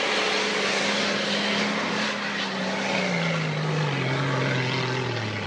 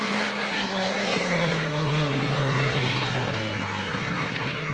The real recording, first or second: first